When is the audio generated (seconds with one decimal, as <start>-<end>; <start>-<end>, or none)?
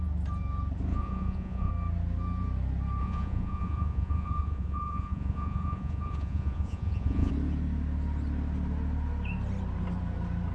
0.9-1.7; 3.0-7.3